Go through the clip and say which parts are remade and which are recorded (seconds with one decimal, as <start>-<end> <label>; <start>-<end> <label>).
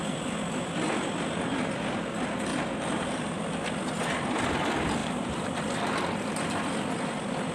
0.0-2.5 recorded; 2.5-3.3 remade; 3.3-5.0 recorded; 5.0-5.5 remade; 5.5-7.5 recorded